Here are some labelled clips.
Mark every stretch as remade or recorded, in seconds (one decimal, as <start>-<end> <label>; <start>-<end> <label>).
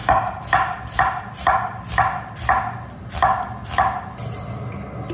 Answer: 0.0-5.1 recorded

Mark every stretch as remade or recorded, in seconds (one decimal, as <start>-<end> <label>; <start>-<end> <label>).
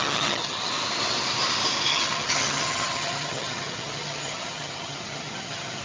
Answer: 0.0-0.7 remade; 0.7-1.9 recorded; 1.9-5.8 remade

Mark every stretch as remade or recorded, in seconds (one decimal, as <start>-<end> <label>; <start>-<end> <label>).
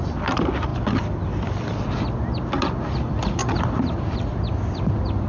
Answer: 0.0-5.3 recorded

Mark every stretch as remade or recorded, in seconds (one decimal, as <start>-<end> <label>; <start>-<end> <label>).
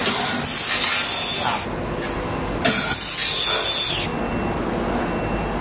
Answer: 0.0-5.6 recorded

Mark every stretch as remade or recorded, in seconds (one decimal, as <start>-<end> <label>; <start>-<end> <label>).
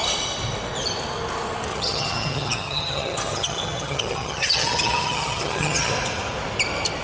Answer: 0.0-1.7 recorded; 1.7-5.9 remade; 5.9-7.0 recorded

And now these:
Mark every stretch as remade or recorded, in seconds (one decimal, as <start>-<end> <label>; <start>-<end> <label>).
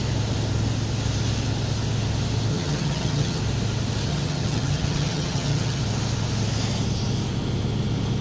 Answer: 0.0-2.5 recorded; 2.5-3.4 remade; 3.4-4.1 recorded; 4.1-5.8 remade; 5.8-8.2 recorded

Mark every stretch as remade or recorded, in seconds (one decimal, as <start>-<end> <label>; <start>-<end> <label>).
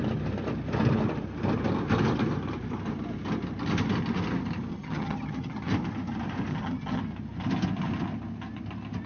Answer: 0.0-4.7 recorded; 4.7-5.7 remade; 5.7-6.5 recorded; 6.5-7.0 remade; 7.0-9.1 recorded